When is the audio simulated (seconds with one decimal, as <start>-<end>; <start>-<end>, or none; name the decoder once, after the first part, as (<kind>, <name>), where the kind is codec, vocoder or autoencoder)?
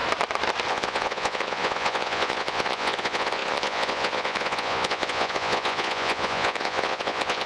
0.7-7.5 (vocoder, Vocos)